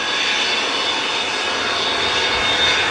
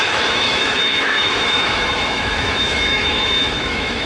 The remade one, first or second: second